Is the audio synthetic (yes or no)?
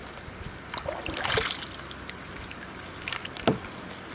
no